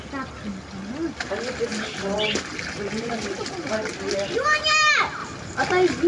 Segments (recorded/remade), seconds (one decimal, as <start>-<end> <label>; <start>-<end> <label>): 0.0-6.1 recorded